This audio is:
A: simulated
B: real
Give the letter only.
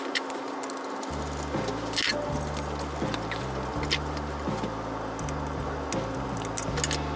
B